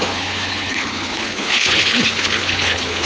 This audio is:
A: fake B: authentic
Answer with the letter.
A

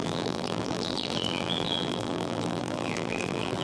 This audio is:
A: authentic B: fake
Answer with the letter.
B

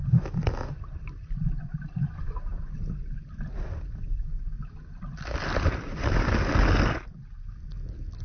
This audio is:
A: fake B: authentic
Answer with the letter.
B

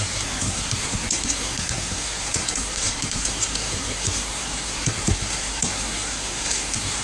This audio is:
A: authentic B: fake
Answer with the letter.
B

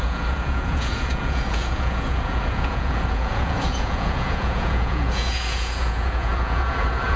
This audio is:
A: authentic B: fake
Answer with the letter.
B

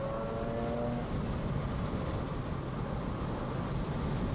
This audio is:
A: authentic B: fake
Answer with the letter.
A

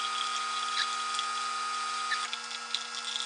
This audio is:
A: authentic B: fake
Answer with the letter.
A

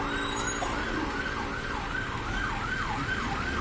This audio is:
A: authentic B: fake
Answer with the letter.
A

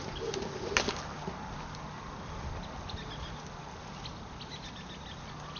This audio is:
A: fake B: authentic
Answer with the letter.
B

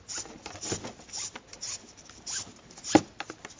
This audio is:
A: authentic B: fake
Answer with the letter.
A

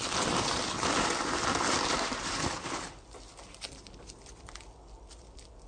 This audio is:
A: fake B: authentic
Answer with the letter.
B